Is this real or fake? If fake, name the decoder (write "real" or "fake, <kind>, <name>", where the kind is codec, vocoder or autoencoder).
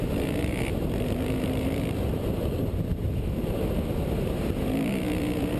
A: fake, vocoder, BigVGAN v2